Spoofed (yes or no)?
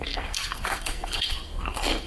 yes